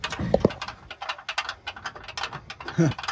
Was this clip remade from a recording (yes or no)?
no